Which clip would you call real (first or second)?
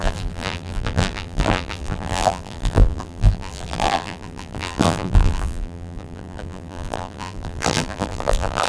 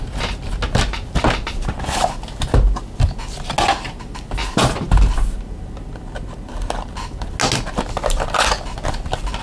second